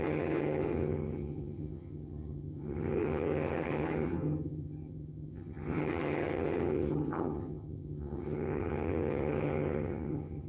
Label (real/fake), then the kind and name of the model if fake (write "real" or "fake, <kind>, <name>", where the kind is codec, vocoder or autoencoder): fake, vocoder, HiFi-GAN